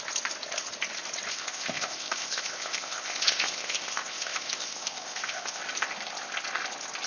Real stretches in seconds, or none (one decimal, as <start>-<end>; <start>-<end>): 0.0-1.3; 5.6-7.1